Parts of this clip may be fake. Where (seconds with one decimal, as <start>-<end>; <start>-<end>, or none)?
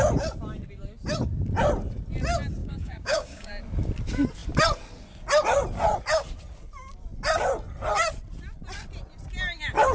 2.6-3.5